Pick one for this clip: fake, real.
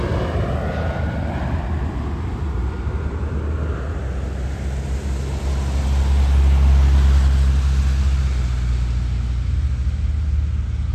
real